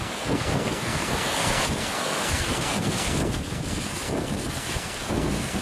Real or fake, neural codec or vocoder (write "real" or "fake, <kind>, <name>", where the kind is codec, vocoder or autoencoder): fake, codec, SNAC